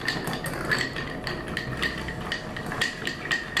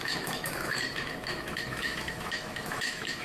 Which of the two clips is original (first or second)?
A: first